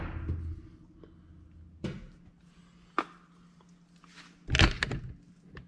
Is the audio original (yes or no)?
yes